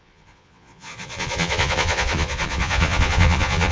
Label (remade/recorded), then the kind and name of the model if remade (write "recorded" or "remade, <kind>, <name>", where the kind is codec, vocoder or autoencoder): remade, vocoder, Vocos